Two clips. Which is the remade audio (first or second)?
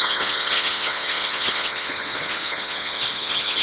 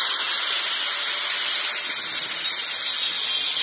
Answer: first